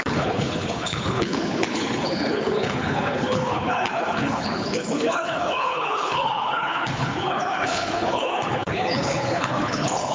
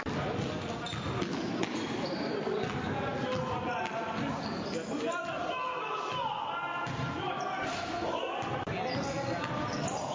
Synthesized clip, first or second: first